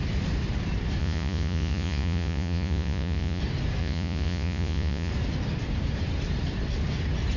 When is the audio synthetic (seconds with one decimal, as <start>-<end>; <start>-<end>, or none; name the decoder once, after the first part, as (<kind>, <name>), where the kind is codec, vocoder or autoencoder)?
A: 1.0-3.4 (vocoder, Vocos); 3.8-5.1